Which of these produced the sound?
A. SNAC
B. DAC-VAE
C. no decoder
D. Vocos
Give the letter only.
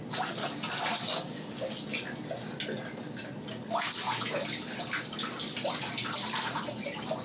C